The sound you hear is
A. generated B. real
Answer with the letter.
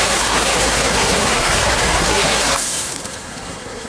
A